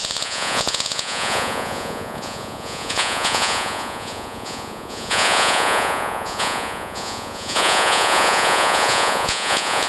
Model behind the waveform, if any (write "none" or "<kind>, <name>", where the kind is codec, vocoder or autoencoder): vocoder, Vocos